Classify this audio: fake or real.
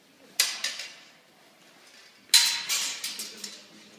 real